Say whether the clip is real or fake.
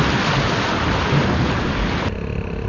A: real